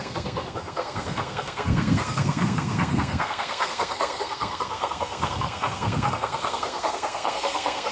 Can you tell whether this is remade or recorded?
remade